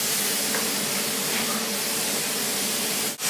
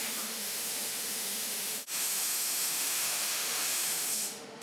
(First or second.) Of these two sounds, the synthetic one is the second